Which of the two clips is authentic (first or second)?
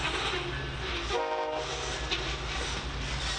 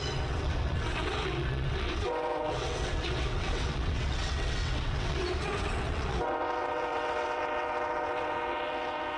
first